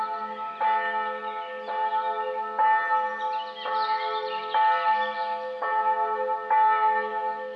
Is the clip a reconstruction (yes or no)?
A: no